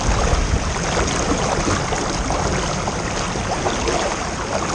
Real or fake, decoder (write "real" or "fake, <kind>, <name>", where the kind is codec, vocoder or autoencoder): real